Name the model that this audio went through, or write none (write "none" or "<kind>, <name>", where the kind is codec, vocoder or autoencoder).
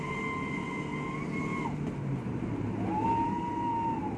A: none